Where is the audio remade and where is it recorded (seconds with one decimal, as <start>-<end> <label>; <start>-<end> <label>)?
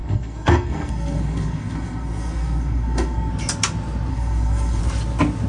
0.0-3.3 remade; 3.3-4.1 recorded; 4.1-4.8 remade; 4.8-5.5 recorded